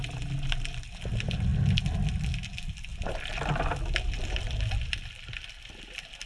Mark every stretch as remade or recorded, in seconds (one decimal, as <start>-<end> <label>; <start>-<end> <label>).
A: 0.0-1.5 recorded; 1.5-2.2 remade; 2.2-2.9 recorded; 2.9-3.6 remade; 3.6-6.3 recorded